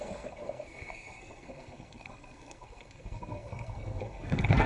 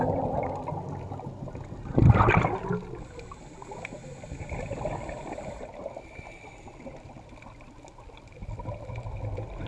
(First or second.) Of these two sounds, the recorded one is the second